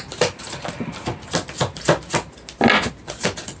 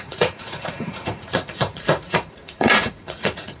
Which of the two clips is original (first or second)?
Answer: first